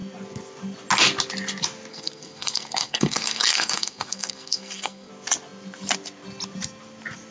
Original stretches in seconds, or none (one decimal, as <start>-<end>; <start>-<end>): 0.0-1.9; 5.1-7.3